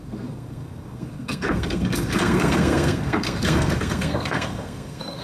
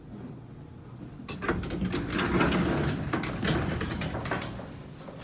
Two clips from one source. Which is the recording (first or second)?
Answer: second